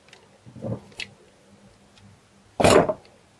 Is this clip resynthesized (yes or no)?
no